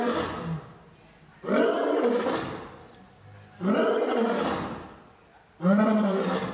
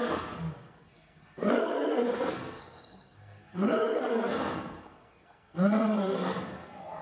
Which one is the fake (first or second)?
second